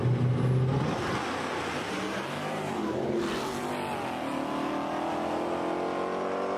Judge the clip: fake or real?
real